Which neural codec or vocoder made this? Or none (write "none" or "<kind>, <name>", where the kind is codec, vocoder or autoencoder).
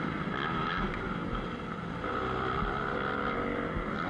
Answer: none